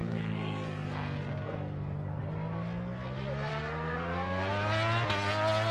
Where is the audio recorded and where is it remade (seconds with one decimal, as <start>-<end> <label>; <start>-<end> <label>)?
0.0-2.2 remade; 2.2-3.5 recorded; 3.5-4.5 remade; 4.5-5.7 recorded